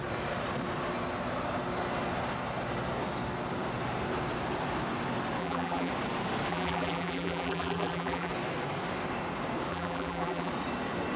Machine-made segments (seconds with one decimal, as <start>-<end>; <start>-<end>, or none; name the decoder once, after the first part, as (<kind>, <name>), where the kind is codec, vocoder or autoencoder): 5.4-5.9 (vocoder, BigVGAN v2); 6.5-8.3; 9.7-10.5